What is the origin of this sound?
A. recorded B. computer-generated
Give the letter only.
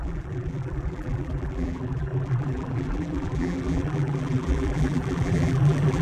B